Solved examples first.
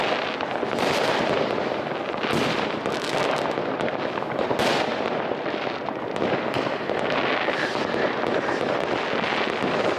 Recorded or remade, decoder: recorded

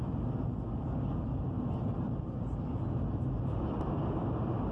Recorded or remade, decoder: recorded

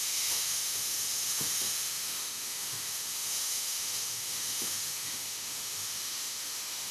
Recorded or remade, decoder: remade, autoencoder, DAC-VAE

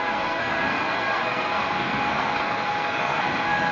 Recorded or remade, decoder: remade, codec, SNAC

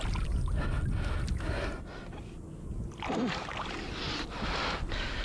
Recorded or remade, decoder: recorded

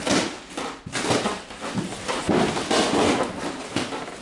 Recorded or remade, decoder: recorded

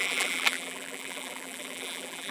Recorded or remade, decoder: remade, vocoder, BigVGAN v2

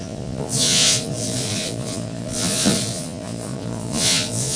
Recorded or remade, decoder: remade, vocoder, Vocos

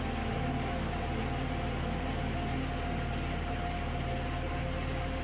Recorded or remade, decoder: recorded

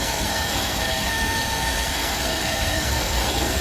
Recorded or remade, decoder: remade, codec, SNAC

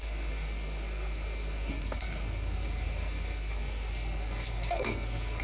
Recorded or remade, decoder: remade, codec, SNAC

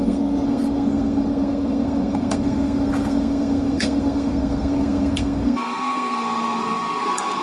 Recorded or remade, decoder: remade, codec, SNAC